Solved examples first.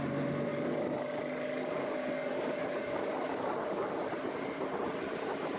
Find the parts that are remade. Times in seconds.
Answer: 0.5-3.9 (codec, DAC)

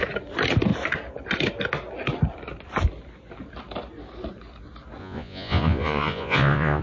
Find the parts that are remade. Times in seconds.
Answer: 5.0-6.8 (vocoder, Vocos)